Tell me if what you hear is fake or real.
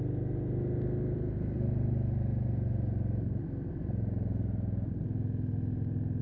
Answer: real